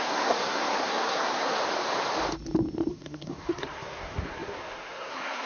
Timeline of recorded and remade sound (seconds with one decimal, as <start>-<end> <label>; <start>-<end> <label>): 0.0-1.6 remade; 1.6-2.9 recorded; 2.9-5.5 remade